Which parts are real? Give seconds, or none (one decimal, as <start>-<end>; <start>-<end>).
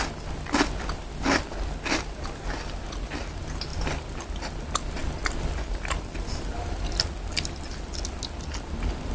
0.0-9.1